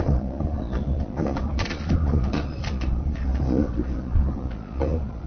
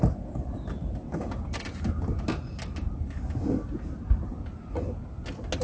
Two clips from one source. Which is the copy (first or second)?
first